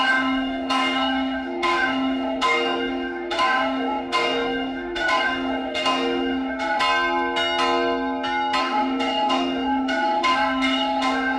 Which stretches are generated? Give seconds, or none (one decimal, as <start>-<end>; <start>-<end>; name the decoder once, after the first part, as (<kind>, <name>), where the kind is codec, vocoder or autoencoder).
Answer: 0.0-6.8 (autoencoder, DAC-VAE); 8.6-11.4